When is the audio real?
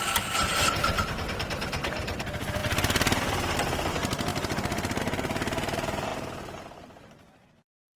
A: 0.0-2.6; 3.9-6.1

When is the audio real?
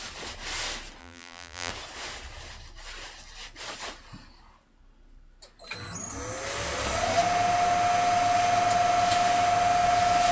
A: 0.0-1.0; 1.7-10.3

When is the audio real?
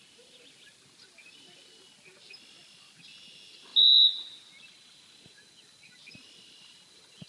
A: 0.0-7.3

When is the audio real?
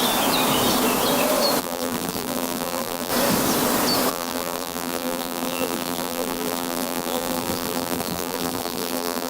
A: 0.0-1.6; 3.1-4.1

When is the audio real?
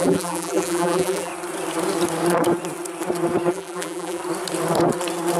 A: 1.3-3.5; 4.2-5.4